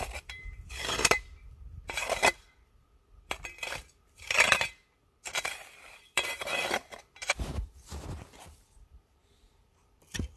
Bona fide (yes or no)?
no